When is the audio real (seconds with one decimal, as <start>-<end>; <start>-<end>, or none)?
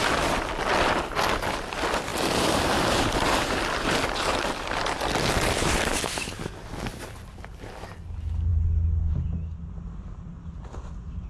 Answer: 0.0-11.3